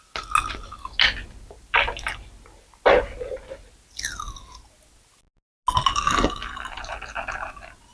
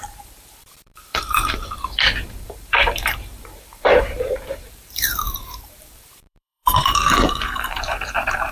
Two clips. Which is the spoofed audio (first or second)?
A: second